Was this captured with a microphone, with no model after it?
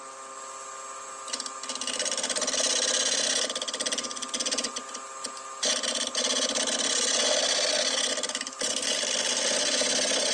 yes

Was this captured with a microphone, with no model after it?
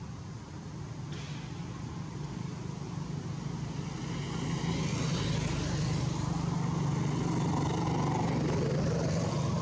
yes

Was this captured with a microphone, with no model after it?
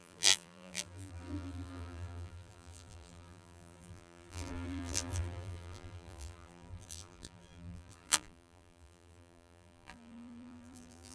no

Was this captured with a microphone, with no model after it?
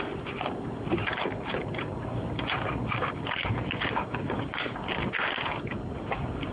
yes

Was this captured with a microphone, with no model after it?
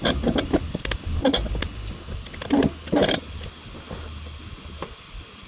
yes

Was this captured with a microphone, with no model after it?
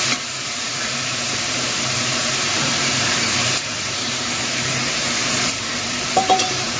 no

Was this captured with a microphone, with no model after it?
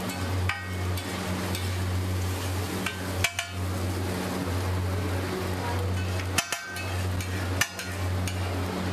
yes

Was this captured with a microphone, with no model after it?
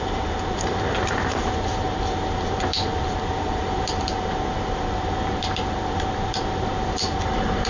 no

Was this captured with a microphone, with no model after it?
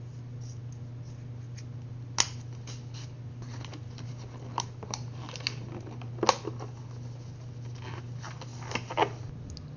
yes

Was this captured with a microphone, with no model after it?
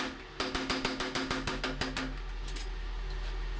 yes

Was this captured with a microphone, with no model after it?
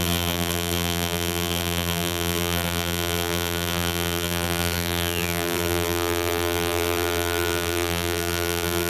no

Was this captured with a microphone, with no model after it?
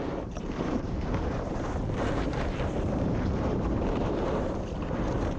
no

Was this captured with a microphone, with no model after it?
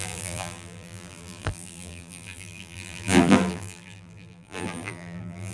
no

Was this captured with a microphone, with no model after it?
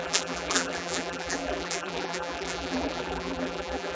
no